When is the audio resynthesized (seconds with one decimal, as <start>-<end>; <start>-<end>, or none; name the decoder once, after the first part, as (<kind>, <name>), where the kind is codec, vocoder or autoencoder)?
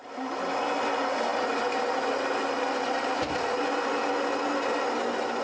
none